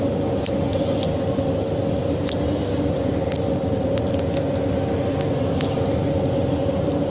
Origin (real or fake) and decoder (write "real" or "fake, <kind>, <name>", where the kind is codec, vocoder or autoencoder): real